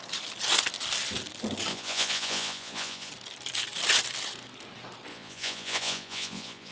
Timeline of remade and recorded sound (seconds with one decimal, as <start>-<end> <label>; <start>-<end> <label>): 0.0-1.7 recorded; 1.7-3.1 remade; 3.1-5.1 recorded; 5.1-6.7 remade